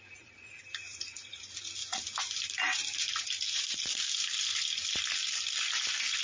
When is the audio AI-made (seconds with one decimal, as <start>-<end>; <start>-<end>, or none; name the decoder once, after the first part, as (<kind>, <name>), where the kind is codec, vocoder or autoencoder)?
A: 0.6-1.4 (vocoder, BigVGAN v2); 1.8-4.9